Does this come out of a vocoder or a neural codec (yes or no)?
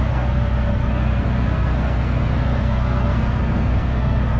yes